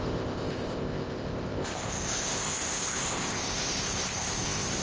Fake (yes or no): yes